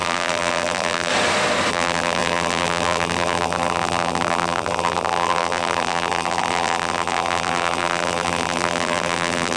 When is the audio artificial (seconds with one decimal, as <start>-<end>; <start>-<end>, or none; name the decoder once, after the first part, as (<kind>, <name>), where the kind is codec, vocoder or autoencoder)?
0.0-1.1 (vocoder, BigVGAN v2); 1.7-9.6